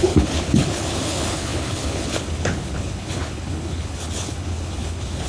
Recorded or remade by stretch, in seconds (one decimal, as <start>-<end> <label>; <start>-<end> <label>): 0.0-5.3 remade

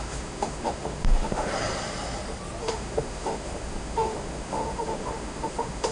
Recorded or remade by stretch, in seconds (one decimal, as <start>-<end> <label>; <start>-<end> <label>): 0.0-1.5 remade; 1.5-2.6 recorded; 2.6-5.9 remade

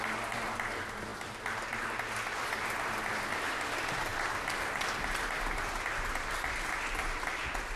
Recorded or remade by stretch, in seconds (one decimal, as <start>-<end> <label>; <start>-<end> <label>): 0.0-7.8 recorded

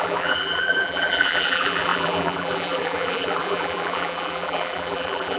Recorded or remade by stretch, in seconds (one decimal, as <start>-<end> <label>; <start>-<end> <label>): 0.0-5.4 remade

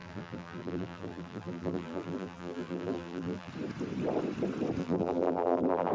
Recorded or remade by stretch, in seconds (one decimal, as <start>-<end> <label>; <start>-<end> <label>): 0.0-3.5 remade; 3.5-4.8 recorded; 4.8-5.9 remade

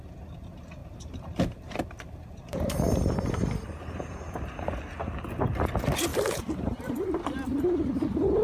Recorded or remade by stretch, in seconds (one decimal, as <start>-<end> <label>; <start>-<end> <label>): 0.0-0.8 recorded; 0.8-4.5 remade; 4.5-6.1 recorded; 6.1-7.2 remade; 7.2-8.4 recorded